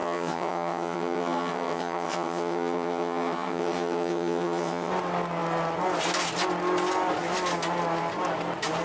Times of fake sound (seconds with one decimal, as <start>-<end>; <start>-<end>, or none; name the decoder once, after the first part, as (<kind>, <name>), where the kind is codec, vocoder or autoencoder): 0.0-4.9 (vocoder, HiFi-GAN)